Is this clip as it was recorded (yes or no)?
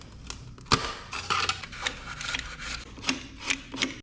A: yes